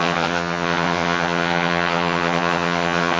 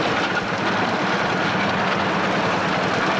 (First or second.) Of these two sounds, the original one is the second